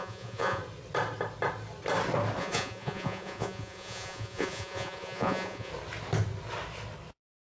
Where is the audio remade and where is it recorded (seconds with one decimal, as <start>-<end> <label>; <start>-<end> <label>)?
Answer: 0.0-0.6 remade; 0.6-2.4 recorded; 2.4-5.7 remade; 5.7-7.1 recorded; 7.1-7.6 remade